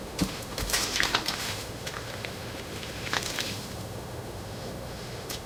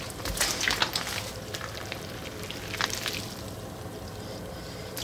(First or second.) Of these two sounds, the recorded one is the second